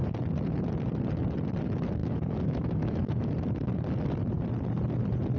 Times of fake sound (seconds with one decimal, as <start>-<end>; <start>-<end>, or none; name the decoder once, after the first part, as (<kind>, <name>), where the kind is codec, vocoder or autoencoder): 2.0-3.3 (autoencoder, DAC-VAE)